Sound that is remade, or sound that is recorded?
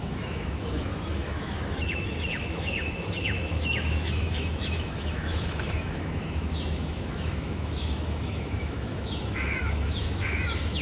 remade